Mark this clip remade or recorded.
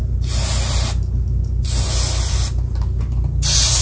recorded